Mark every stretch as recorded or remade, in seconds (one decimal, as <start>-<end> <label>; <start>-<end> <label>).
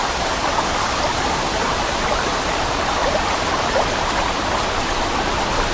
0.0-5.7 recorded